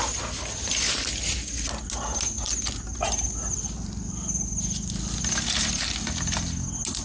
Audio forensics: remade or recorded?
recorded